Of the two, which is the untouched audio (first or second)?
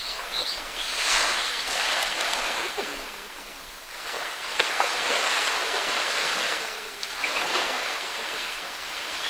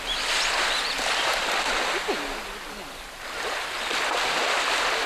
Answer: second